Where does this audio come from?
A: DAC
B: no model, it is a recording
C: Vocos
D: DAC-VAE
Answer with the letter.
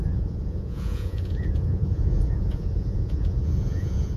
C